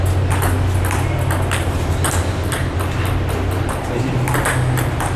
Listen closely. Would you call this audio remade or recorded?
recorded